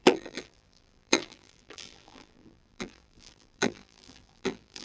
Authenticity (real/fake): fake